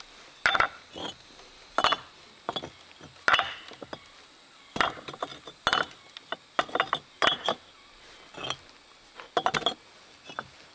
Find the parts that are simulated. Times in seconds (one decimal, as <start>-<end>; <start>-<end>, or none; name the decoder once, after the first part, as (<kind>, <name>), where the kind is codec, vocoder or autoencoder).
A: none